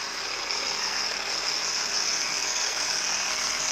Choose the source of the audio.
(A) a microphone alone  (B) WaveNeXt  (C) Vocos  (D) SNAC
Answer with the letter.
D